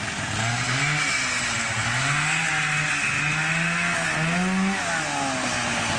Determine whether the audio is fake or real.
real